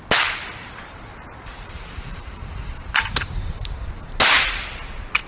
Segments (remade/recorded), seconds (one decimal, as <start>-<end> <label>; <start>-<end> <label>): 0.0-0.6 recorded; 0.6-3.8 remade; 3.8-5.3 recorded